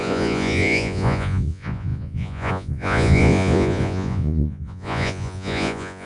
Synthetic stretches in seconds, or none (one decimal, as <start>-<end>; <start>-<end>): 0.0-6.1